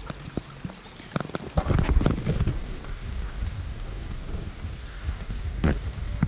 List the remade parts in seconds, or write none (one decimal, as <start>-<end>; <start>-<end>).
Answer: 2.2-6.3